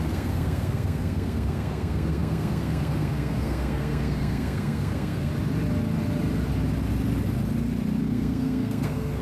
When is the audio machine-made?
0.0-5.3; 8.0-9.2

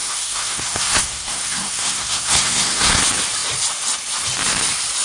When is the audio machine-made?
0.0-3.0

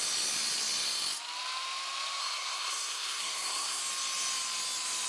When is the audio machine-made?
2.2-3.8

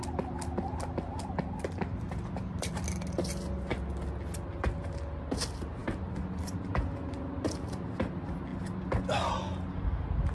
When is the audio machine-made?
none

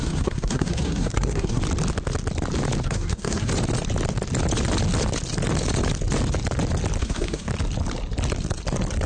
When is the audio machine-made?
0.0-1.6; 2.8-3.5; 7.0-7.5

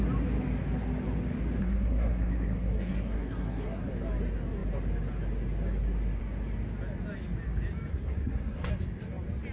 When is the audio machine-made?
1.6-3.9; 7.9-8.7